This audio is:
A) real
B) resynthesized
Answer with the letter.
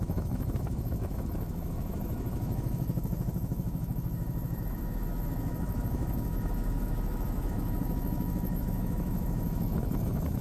B